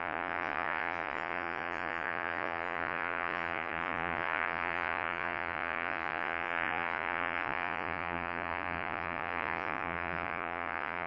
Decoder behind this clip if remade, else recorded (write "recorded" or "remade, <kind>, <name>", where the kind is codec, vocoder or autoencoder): remade, vocoder, Vocos